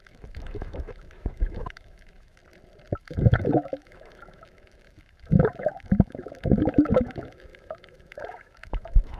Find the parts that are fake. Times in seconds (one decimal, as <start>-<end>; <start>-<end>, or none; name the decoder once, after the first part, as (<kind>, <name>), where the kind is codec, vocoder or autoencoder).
0.0-2.4 (autoencoder, DAC-VAE); 3.0-9.2